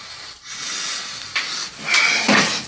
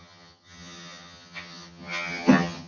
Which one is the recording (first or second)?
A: first